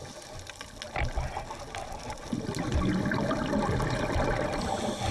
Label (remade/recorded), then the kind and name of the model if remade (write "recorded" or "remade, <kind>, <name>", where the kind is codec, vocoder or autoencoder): recorded